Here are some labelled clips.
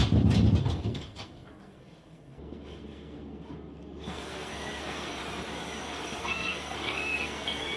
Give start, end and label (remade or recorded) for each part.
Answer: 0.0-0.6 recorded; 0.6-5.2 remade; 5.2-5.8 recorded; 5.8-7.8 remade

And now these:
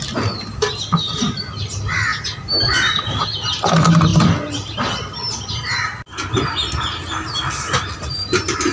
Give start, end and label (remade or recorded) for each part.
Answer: 0.0-8.7 recorded